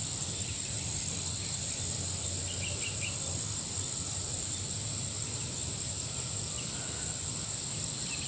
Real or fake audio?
real